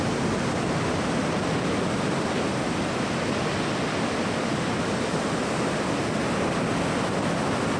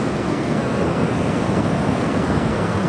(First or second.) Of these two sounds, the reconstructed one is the second